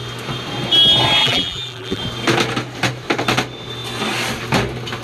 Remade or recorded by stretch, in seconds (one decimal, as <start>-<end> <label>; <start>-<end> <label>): 0.0-1.2 recorded; 1.2-2.0 remade; 2.0-5.0 recorded